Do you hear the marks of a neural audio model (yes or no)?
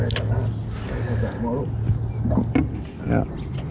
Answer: no